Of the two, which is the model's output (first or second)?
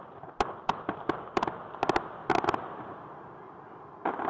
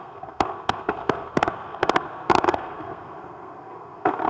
second